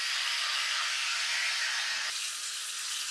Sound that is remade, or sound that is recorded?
recorded